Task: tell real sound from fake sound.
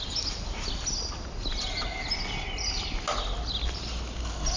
real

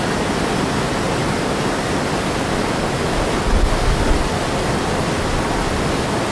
real